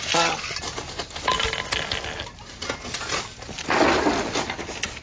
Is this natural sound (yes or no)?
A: yes